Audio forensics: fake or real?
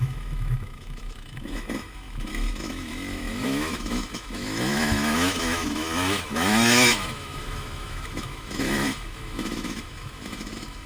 fake